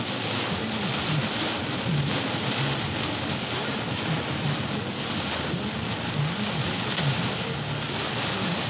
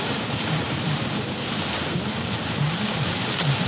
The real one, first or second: first